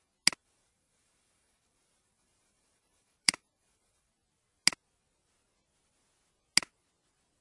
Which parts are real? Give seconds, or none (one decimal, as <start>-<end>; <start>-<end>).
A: 0.0-0.4; 4.1-7.4